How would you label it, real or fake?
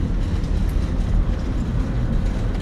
real